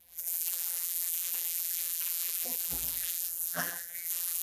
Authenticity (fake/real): fake